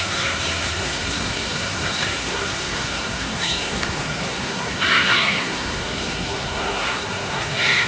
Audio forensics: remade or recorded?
remade